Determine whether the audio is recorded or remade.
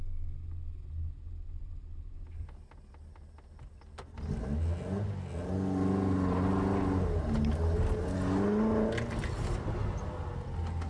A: recorded